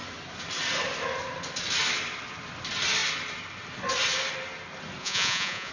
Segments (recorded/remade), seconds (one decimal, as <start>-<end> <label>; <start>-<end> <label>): 0.0-5.0 recorded; 5.0-5.7 remade